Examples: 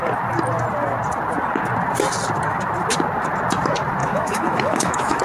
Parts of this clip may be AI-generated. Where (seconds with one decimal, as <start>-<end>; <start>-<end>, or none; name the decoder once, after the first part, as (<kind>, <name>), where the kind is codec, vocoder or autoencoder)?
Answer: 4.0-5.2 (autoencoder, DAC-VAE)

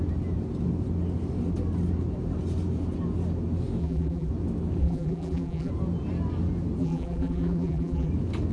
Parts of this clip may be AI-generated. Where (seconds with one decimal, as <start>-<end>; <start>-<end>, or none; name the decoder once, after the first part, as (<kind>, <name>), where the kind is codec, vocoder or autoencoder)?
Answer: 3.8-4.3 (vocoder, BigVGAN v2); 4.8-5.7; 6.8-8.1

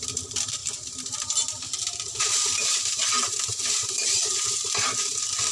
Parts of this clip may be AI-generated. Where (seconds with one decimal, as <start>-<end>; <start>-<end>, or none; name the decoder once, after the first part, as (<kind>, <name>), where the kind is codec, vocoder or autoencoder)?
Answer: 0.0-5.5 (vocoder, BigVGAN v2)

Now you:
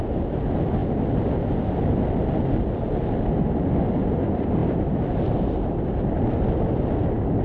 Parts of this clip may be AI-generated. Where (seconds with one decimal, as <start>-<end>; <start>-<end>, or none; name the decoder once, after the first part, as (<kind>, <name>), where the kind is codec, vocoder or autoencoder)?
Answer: none

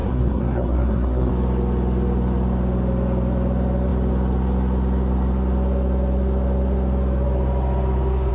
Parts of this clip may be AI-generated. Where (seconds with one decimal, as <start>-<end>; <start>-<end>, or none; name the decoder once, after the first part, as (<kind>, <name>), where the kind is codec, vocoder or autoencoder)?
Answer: 0.0-1.3 (codec, SNAC)

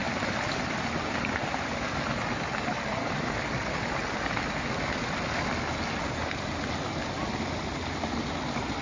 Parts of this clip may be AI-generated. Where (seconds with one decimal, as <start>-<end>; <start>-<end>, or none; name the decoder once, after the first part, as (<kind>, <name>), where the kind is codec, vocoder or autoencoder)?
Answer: none